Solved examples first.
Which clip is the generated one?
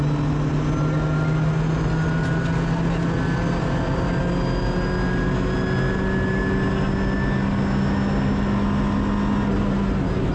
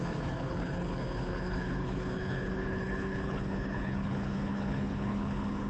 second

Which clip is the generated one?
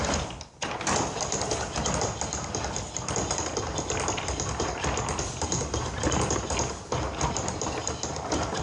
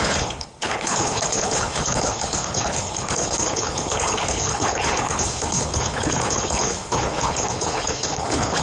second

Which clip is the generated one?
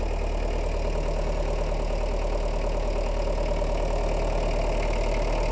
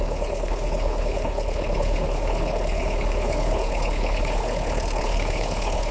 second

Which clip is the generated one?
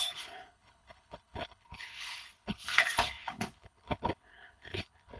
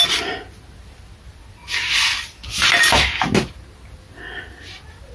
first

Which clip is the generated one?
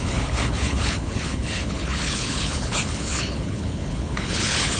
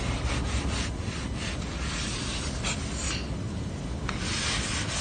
first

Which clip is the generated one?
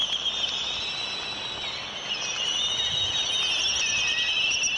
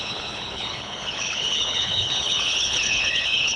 second